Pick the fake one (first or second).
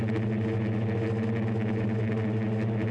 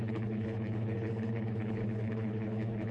second